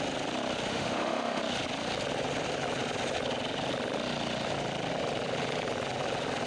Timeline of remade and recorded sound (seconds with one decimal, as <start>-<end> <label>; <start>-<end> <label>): 0.0-0.7 recorded; 0.7-1.4 remade; 1.4-6.5 recorded